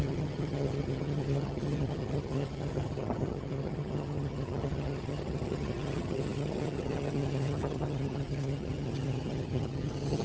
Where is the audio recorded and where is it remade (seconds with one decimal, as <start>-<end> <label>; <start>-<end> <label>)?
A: 0.0-10.2 remade